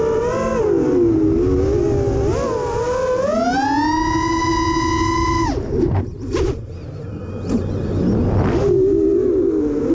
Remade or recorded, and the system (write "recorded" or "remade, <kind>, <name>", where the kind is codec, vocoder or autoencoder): recorded